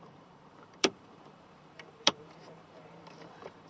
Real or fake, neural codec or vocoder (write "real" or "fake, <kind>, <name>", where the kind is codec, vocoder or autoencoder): fake, vocoder, BigVGAN v2